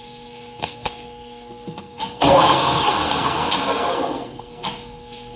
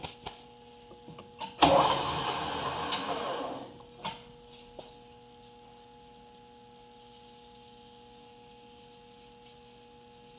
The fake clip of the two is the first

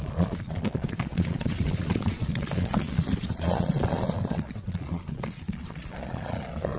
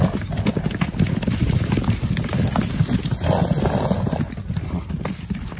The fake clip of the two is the first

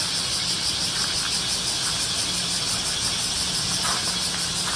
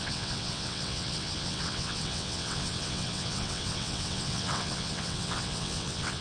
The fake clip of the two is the second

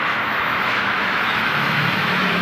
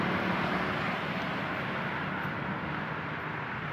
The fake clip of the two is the first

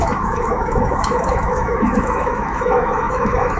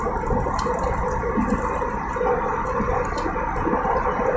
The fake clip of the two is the first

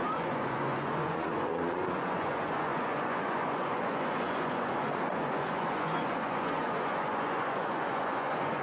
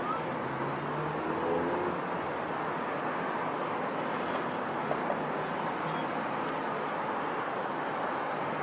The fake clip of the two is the first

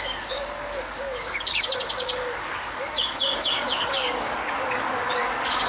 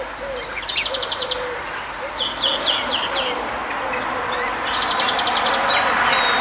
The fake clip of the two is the first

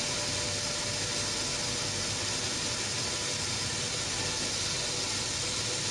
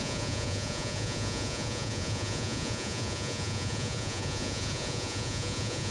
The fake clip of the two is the second